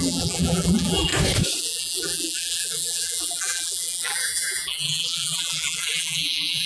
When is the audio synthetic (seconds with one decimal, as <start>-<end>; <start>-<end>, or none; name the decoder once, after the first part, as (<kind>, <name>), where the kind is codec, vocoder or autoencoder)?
0.0-1.1 (vocoder, BigVGAN v2); 1.6-6.7